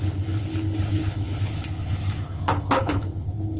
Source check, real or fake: fake